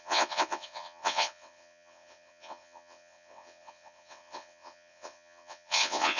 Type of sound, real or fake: fake